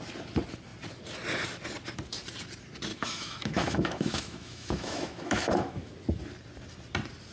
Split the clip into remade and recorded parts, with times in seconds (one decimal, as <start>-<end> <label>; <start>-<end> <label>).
0.0-2.9 recorded; 2.9-5.9 remade; 5.9-7.3 recorded